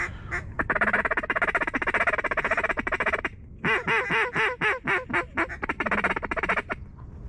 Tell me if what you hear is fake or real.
real